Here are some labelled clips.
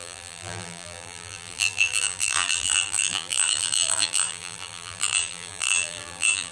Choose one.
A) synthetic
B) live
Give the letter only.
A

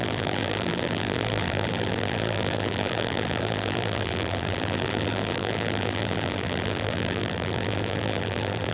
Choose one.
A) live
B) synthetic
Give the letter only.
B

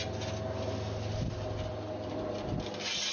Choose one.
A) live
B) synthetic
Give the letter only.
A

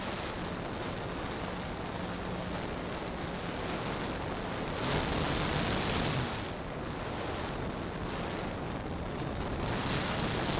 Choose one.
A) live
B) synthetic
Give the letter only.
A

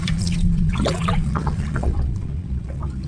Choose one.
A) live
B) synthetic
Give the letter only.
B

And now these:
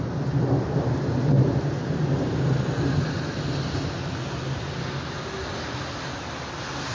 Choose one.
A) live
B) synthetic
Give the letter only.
A